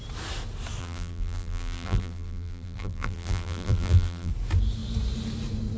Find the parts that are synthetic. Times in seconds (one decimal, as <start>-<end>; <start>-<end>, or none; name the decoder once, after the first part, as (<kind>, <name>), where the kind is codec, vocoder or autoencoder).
0.8-4.3 (vocoder, BigVGAN v2)